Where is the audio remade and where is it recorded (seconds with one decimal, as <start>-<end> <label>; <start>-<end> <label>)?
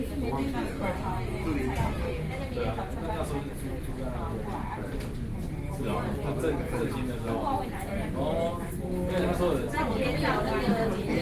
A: 0.0-11.2 recorded